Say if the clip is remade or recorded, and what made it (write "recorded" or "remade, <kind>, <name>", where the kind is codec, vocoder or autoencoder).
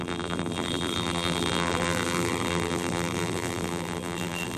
remade, vocoder, BigVGAN v2